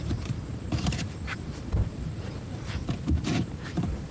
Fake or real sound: fake